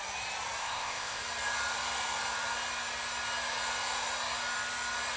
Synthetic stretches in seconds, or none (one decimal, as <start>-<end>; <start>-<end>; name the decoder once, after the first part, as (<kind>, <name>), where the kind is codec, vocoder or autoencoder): 0.6-1.2 (codec, ZipCodec)